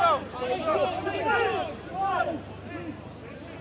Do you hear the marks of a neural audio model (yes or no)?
no